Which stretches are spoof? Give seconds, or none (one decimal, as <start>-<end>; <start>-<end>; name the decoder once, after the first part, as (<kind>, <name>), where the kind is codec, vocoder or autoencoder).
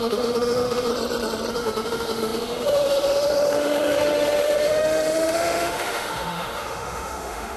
0.0-0.9 (autoencoder, DAC-VAE); 1.5-7.6